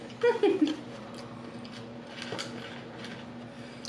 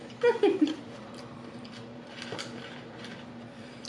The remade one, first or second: second